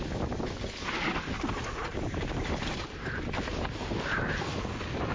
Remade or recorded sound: recorded